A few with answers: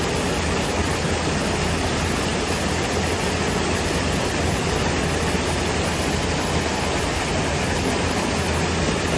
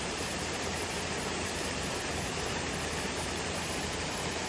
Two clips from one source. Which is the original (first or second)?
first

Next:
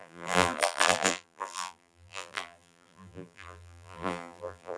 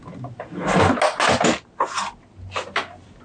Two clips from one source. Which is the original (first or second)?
second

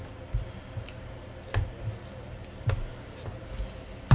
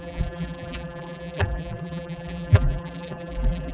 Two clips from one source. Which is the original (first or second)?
first